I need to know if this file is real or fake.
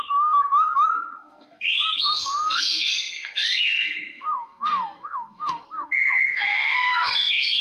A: fake